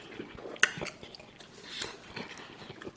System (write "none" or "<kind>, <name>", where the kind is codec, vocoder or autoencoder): vocoder, BigVGAN v2